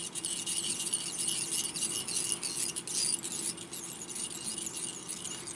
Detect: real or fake real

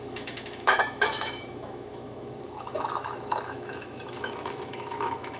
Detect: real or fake fake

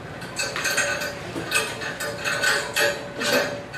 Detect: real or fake real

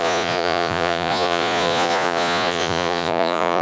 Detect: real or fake fake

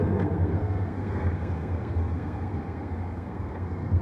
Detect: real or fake fake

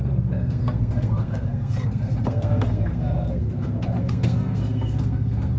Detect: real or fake fake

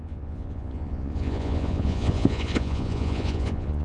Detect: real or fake fake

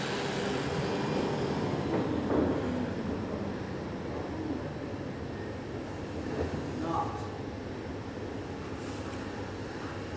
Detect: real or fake real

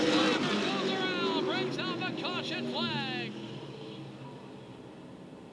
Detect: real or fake real